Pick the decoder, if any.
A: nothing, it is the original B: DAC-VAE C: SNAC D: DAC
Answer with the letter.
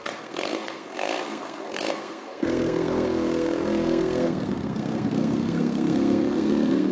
C